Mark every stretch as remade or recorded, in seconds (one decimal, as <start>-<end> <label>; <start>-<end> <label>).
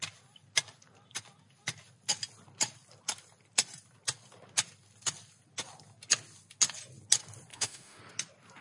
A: 0.0-7.5 recorded; 7.5-8.0 remade; 8.0-8.6 recorded